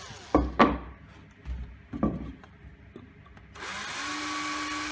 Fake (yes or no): no